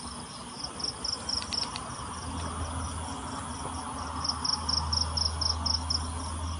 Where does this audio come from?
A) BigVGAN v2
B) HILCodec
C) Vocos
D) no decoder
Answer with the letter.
D